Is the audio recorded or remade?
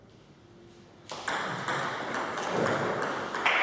recorded